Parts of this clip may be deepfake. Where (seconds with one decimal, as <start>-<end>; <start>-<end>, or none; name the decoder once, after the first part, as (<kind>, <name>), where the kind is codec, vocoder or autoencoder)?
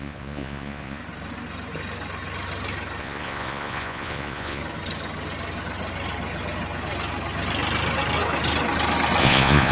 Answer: 0.0-1.0 (vocoder, Vocos); 3.0-4.6; 9.2-9.7